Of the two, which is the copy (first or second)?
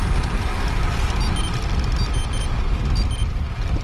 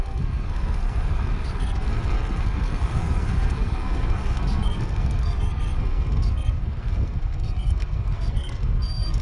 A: second